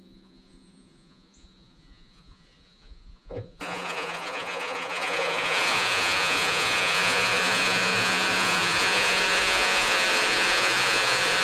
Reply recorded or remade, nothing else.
remade